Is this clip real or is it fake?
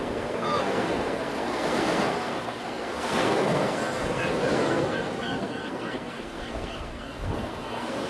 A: fake